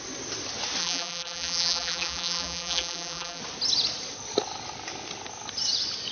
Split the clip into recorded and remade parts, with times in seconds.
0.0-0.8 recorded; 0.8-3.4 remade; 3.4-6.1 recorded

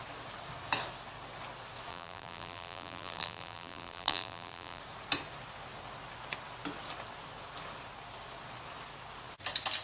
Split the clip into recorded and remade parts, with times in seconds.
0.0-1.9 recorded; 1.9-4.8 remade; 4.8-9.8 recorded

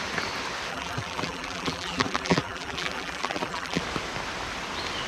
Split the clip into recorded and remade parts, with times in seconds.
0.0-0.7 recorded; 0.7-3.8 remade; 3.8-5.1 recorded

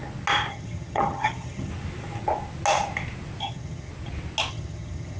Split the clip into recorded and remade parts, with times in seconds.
0.0-0.5 recorded; 0.5-1.7 remade; 1.7-3.4 recorded; 3.4-3.9 remade; 3.9-4.5 recorded; 4.5-5.2 remade

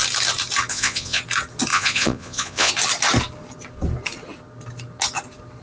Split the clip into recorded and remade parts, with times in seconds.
0.0-0.7 recorded; 0.7-1.2 remade; 1.2-1.7 recorded; 1.7-2.7 remade; 2.7-5.6 recorded

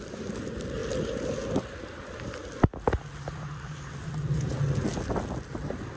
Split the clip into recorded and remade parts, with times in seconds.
0.0-6.0 recorded

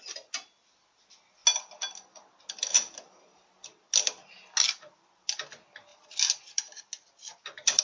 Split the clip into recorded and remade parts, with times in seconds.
0.0-5.9 recorded; 5.9-6.9 remade; 6.9-7.8 recorded